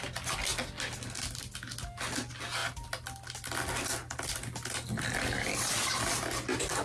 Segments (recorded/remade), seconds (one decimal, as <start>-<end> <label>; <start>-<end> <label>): 0.0-6.8 recorded